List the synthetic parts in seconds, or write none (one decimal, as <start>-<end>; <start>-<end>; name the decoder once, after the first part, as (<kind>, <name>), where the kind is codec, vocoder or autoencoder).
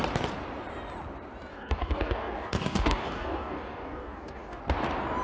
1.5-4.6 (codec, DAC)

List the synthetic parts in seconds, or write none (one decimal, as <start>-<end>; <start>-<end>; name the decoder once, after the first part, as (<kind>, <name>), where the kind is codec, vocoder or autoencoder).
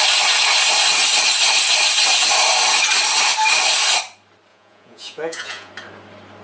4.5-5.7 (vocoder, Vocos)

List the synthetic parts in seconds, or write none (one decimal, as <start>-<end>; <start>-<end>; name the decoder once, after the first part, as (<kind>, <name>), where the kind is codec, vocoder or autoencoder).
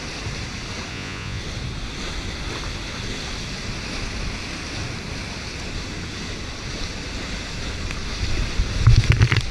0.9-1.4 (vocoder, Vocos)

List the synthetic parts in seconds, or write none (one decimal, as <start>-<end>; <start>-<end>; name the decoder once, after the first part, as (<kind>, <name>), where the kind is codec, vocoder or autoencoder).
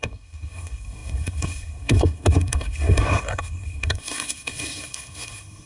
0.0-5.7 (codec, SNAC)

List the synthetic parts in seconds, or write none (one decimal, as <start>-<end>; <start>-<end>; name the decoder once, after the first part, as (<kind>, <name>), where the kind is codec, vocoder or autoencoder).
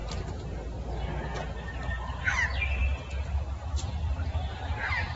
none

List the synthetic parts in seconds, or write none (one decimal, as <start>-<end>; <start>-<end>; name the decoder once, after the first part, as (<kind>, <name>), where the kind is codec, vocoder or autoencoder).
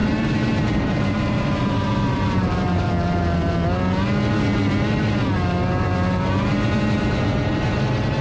0.0-2.9 (vocoder, BigVGAN v2)